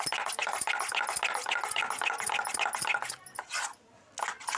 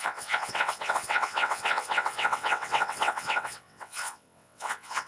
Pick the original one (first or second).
first